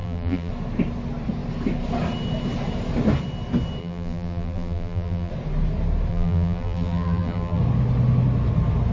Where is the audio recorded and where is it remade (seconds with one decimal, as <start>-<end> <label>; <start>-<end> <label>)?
0.0-0.5 remade; 0.5-3.8 recorded; 3.8-5.3 remade; 5.3-6.1 recorded; 6.1-7.6 remade; 7.6-8.9 recorded